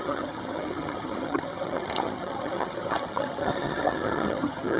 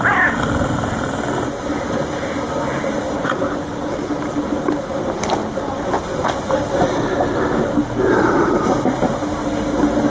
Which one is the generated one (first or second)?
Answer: first